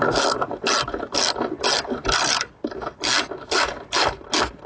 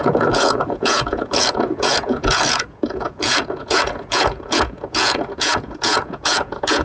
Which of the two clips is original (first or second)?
first